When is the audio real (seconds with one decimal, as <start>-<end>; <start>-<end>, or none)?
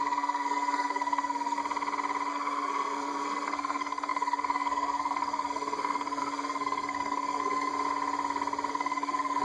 1.6-2.3; 7.7-8.7